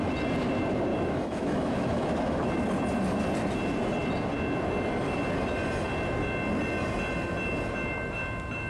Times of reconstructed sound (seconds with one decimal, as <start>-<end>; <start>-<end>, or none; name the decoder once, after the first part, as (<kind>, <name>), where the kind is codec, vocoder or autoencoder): 0.9-2.5 (autoencoder, DAC-VAE)